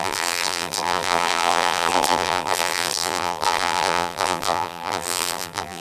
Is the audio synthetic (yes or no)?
yes